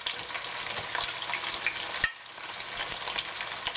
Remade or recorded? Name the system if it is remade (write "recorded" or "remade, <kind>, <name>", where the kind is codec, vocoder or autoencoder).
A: recorded